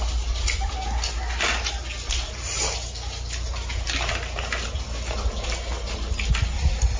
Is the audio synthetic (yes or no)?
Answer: no